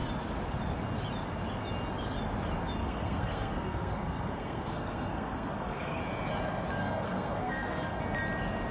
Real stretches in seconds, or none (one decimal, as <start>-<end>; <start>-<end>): 0.0-2.8; 6.0-6.8; 8.0-8.7